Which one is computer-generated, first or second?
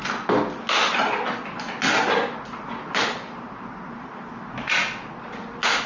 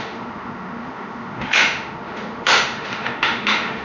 second